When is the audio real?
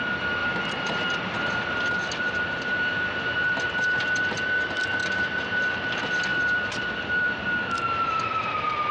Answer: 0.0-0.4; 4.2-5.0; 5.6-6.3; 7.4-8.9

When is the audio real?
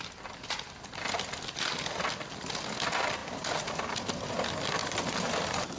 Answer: 0.0-3.2; 4.0-4.8